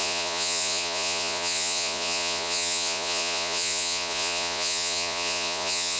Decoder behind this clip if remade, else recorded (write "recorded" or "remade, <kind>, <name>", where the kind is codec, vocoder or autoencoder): remade, vocoder, Vocos